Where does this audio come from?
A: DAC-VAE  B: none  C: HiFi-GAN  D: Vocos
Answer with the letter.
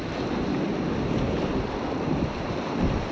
B